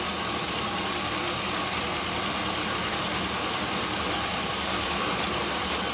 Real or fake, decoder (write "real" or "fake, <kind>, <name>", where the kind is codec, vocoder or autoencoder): real